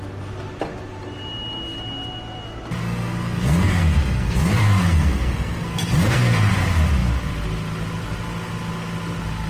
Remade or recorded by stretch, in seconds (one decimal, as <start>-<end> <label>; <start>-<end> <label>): 0.0-2.8 recorded; 2.8-6.5 remade; 6.5-9.5 recorded

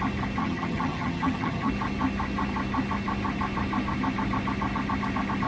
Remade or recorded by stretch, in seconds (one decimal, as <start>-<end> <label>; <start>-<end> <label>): 0.0-0.4 recorded; 0.4-1.7 remade; 1.7-5.5 recorded

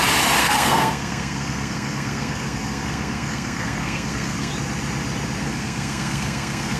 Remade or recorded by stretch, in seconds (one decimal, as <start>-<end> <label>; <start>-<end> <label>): 0.0-0.4 recorded; 0.4-4.5 remade; 4.5-5.4 recorded; 5.4-6.8 remade

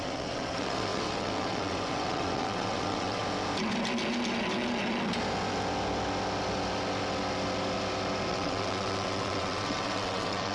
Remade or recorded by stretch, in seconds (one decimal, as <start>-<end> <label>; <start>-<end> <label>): 0.0-3.2 remade; 3.2-8.3 recorded; 8.3-10.5 remade